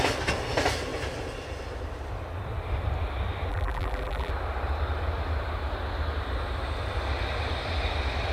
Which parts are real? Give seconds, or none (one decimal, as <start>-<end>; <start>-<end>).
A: 0.0-3.5; 4.3-8.3